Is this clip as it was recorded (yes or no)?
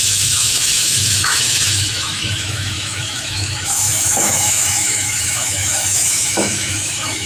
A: no